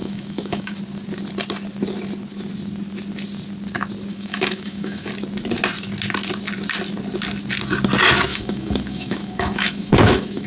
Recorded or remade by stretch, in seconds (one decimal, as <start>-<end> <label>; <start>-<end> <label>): 0.0-0.8 remade; 0.8-4.1 recorded; 4.1-5.1 remade; 5.1-8.3 recorded; 8.3-10.5 remade